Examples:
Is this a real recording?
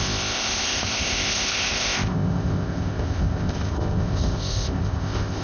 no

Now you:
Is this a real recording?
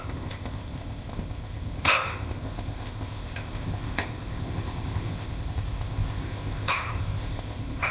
no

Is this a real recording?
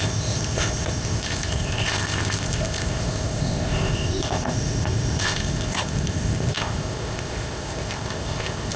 no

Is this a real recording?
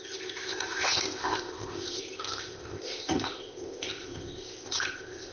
no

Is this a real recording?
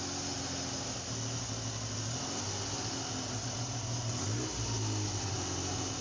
yes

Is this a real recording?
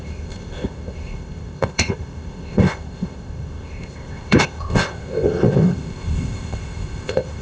no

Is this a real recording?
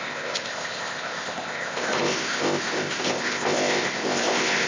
no